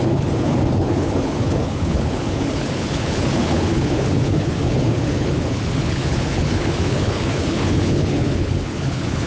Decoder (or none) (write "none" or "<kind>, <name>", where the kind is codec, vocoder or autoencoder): codec, HILCodec